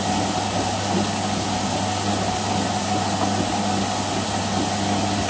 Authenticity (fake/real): real